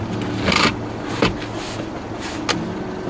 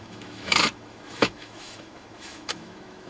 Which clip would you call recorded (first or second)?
first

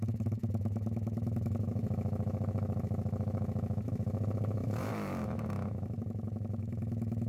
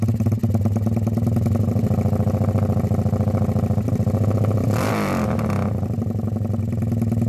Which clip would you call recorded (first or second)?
second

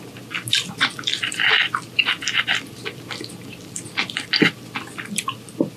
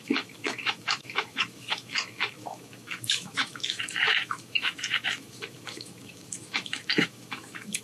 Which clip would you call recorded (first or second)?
first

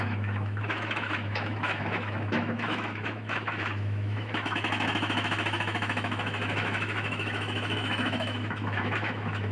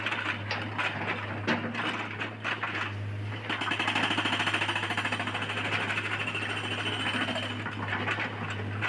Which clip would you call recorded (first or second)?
second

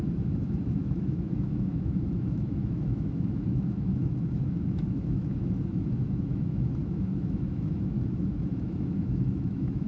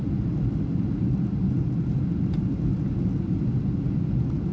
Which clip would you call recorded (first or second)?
second